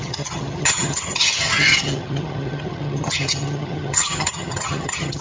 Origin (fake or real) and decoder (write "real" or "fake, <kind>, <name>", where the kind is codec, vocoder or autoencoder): fake, vocoder, HiFi-GAN